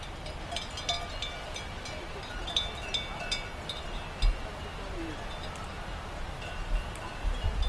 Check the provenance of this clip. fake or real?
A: real